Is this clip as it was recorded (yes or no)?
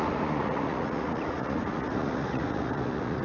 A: no